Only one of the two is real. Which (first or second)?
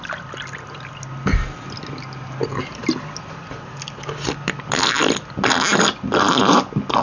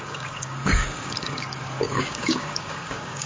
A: first